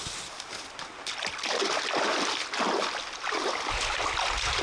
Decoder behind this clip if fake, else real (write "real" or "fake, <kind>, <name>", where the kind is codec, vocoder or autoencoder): real